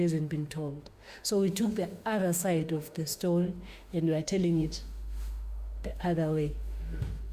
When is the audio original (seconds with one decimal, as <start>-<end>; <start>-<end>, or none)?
none